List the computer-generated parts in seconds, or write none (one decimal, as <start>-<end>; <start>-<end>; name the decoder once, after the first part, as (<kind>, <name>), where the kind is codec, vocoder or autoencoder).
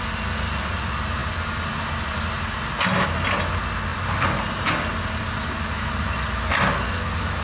3.9-4.7 (vocoder, BigVGAN v2)